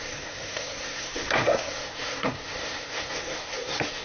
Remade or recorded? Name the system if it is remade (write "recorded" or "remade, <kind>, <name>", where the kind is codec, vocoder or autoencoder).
remade, codec, SNAC